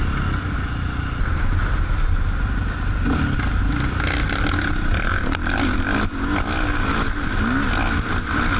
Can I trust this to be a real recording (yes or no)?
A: yes